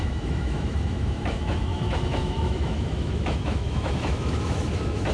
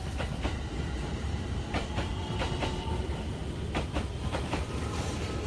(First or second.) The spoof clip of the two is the first